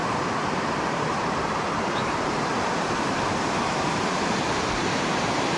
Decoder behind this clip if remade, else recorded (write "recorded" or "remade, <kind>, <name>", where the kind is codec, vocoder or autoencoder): remade, vocoder, BigVGAN v2